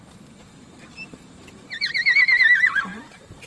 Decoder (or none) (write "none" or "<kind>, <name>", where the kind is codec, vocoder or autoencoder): vocoder, BigVGAN v2